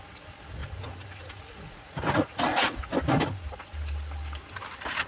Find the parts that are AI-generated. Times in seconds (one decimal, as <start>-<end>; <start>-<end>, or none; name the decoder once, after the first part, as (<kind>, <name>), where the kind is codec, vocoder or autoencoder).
0.6-2.9 (vocoder, Vocos)